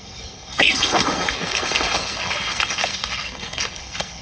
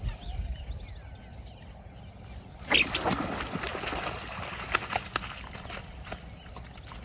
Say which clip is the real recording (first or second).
second